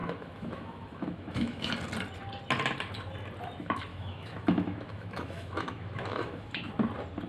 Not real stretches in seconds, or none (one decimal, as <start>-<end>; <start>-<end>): 0.0-1.7; 3.9-6.7